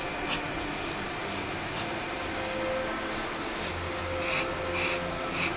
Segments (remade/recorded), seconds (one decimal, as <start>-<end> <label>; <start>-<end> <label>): 0.0-5.6 recorded